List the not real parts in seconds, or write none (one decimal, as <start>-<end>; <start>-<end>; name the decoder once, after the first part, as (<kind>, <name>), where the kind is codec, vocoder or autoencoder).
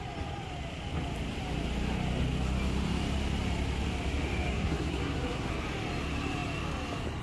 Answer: 4.5-5.5 (codec, SNAC)